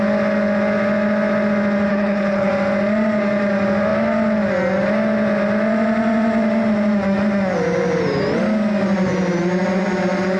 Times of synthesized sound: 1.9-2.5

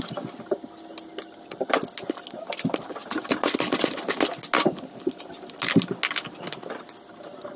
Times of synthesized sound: none